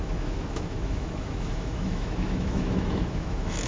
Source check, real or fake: fake